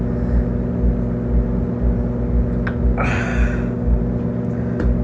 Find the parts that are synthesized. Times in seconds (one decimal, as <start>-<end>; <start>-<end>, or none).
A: 3.3-4.0